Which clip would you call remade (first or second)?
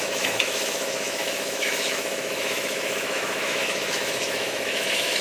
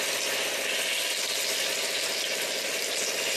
first